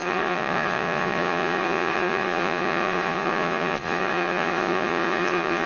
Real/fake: fake